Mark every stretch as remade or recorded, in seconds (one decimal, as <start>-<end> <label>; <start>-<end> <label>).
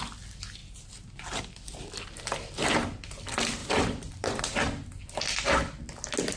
0.0-3.6 recorded; 3.6-4.4 remade; 4.4-6.4 recorded